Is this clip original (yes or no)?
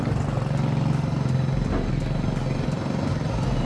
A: yes